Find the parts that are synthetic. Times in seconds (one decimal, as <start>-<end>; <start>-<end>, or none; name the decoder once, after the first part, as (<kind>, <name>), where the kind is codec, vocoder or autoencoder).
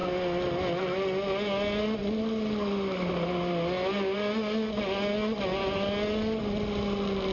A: none